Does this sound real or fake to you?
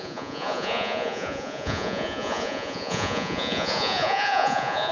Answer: fake